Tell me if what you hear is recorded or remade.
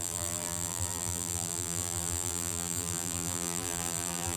remade